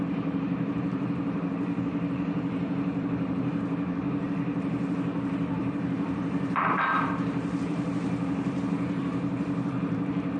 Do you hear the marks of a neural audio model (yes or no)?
yes